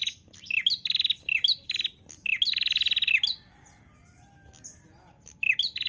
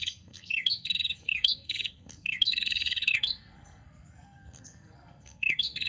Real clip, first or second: first